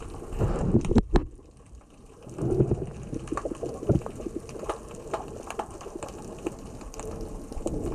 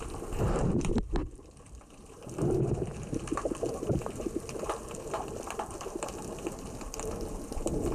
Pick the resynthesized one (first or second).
second